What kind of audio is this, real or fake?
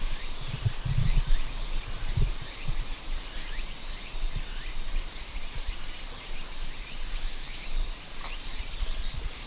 fake